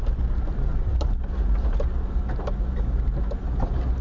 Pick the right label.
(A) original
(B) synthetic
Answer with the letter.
A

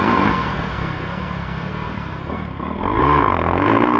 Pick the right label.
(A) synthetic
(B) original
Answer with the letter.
A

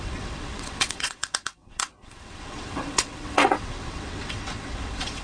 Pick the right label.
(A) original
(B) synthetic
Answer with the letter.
B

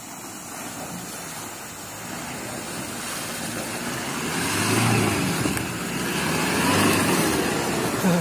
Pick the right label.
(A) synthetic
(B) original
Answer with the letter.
B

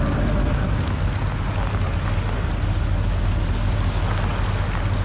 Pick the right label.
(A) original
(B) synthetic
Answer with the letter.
A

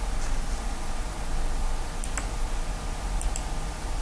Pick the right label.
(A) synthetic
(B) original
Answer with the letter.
B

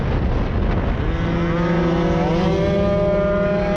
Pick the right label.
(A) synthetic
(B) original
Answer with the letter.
B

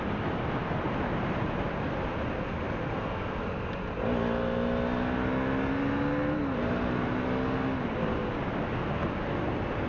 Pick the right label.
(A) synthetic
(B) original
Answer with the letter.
B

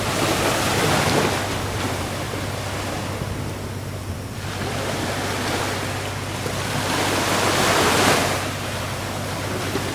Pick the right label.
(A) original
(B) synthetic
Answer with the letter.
A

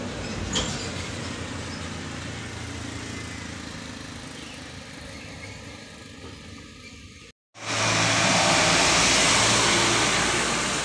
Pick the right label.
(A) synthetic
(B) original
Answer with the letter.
B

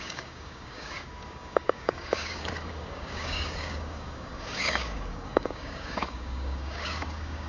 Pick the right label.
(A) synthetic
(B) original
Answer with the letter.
A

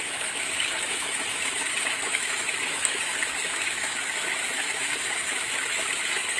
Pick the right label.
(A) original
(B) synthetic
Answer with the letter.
B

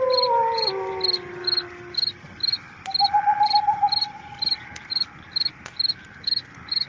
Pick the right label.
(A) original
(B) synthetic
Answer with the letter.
A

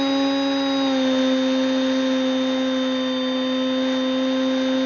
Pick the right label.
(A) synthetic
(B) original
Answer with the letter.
B